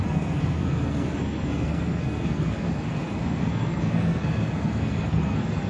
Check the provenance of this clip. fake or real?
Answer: fake